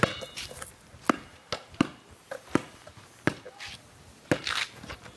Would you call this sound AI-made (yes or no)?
no